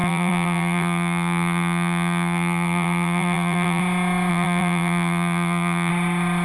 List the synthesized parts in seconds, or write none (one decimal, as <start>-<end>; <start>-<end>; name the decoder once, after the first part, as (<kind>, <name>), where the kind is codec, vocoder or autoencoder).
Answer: 0.0-3.8 (vocoder, BigVGAN v2); 4.3-5.9